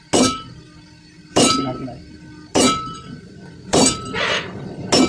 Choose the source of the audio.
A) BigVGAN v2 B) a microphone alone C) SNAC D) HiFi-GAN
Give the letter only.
B